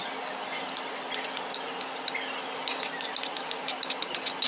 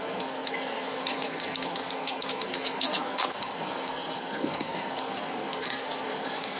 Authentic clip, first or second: first